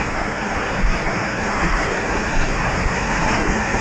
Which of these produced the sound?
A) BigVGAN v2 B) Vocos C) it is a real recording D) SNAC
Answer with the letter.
D